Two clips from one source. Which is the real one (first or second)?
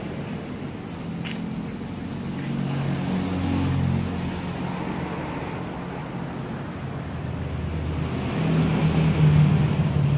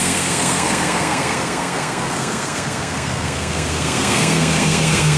first